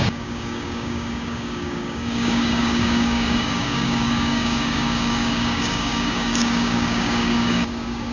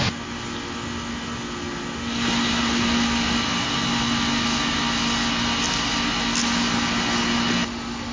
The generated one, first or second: first